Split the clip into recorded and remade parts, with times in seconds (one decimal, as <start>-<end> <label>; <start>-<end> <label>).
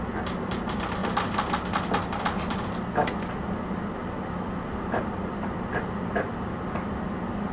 0.0-7.5 recorded